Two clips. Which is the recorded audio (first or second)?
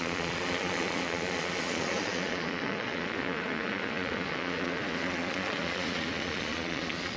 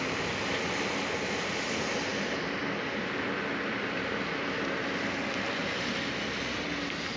second